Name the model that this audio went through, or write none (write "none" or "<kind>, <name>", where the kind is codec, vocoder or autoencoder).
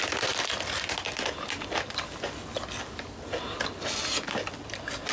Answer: none